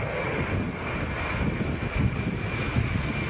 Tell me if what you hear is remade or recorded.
recorded